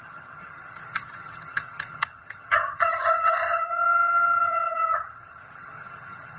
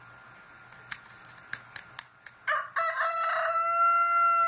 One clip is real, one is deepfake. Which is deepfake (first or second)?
first